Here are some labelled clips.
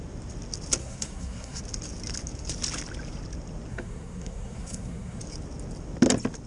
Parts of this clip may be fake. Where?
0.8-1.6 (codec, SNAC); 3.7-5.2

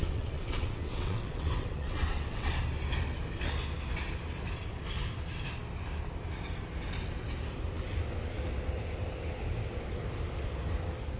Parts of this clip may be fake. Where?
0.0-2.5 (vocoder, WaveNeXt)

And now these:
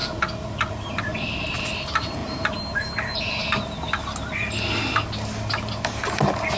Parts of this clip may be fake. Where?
none

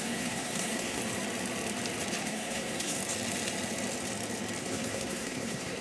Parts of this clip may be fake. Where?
0.0-1.0 (codec, SNAC); 2.2-3.0; 4.6-5.8

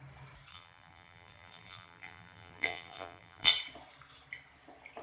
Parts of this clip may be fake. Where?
0.5-3.5 (vocoder, BigVGAN v2)

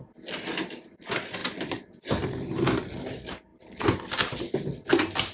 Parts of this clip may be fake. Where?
none

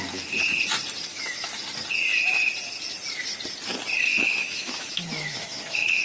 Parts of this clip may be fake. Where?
1.1-1.6 (autoencoder, DAC-VAE); 4.1-6.0

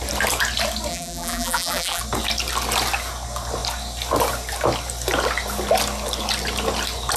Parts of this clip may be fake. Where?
0.9-2.0 (vocoder, BigVGAN v2)